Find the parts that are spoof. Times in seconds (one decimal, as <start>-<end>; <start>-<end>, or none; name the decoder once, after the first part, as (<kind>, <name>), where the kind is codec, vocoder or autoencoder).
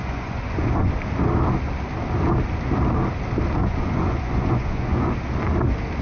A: 0.0-0.9 (vocoder, Vocos); 3.6-5.1